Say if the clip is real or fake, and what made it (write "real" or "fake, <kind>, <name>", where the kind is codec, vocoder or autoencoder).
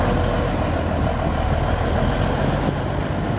real